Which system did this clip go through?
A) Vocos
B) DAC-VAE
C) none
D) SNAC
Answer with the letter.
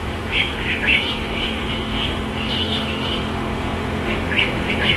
B